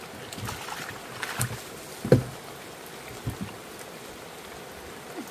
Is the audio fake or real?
real